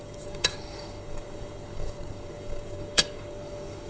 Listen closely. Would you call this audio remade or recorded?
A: remade